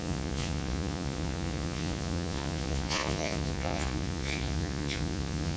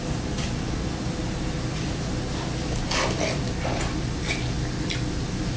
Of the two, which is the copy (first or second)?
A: first